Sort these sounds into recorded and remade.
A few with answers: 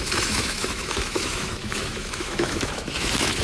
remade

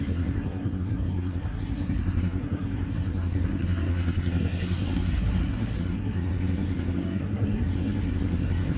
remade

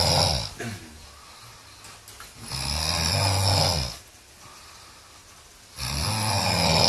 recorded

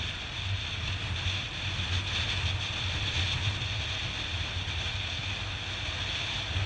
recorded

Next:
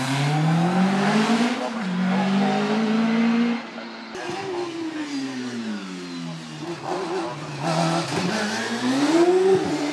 recorded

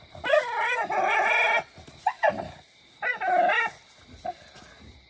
recorded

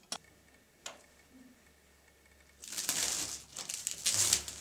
recorded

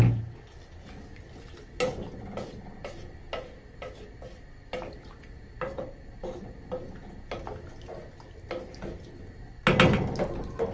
recorded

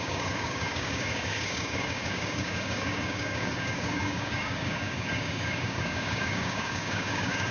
remade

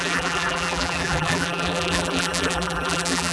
remade